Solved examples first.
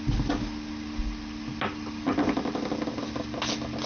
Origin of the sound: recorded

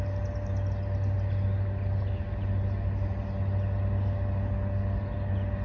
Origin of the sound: recorded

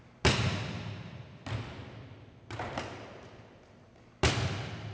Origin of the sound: recorded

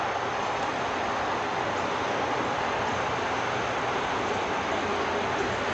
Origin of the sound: recorded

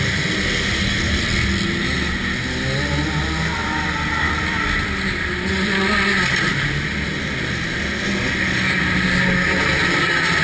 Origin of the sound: recorded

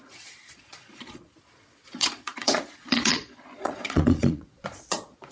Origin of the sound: remade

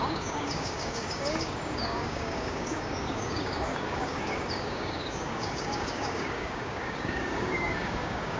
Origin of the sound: remade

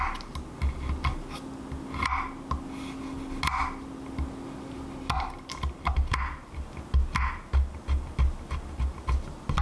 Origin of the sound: recorded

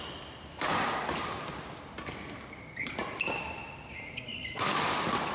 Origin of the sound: recorded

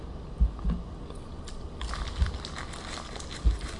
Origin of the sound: recorded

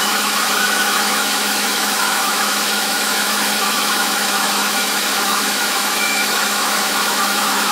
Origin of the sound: remade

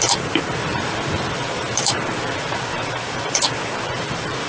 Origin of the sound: remade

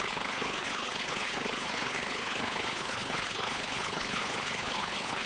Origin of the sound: remade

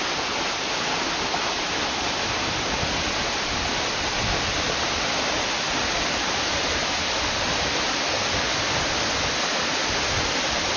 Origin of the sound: recorded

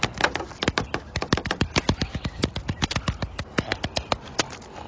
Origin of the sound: recorded